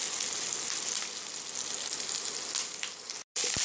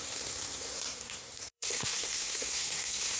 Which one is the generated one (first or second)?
second